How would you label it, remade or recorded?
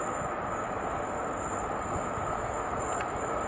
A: recorded